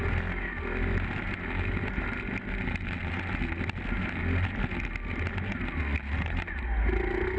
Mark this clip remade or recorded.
recorded